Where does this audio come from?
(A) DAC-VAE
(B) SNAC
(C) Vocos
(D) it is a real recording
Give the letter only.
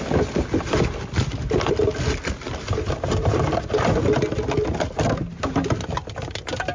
D